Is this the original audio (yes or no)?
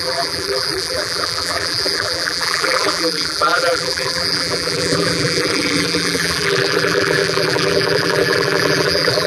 no